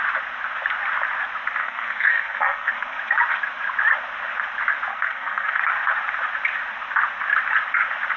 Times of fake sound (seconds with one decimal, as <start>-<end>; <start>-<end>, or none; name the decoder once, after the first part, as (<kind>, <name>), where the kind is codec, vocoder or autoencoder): 1.6-3.0 (codec, SNAC); 4.9-5.6